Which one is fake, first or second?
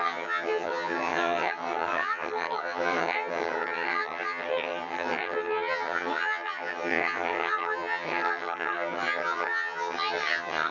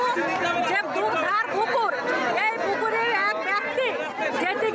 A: first